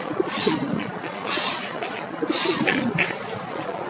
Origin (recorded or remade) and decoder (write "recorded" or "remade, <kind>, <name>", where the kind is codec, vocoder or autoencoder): remade, vocoder, Vocos